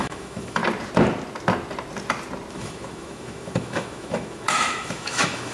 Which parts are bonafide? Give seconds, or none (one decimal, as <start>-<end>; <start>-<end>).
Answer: 0.6-2.5